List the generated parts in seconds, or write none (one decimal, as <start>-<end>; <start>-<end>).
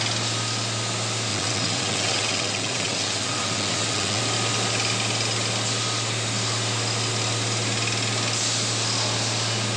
1.3-4.2